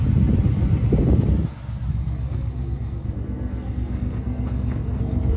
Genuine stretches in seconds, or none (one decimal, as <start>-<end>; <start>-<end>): 0.0-1.9

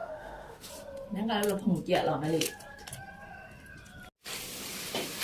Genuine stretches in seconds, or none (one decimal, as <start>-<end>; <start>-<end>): 0.7-5.2

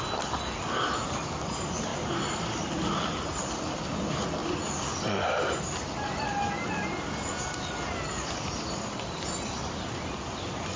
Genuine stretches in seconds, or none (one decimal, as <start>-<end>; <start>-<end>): 0.0-10.8

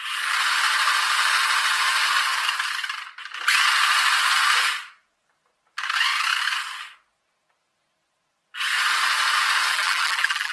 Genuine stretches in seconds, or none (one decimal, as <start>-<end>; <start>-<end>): 0.0-9.7

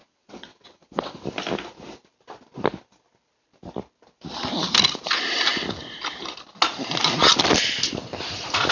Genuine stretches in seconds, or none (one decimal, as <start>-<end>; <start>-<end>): 1.2-8.7

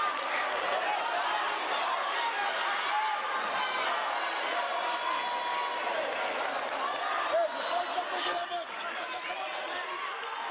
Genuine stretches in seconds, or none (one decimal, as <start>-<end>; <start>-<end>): 0.0-10.5

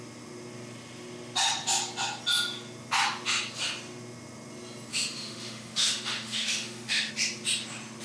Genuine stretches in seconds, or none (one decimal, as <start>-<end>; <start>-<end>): 0.0-4.9; 7.1-8.0